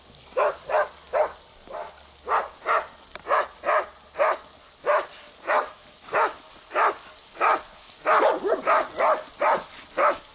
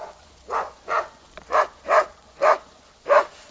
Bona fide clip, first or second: first